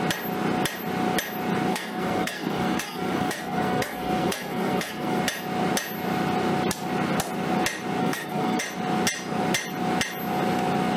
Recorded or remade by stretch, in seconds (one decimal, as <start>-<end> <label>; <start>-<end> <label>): 0.0-1.7 recorded; 1.7-5.2 remade; 5.2-8.0 recorded; 8.0-8.6 remade; 8.6-11.0 recorded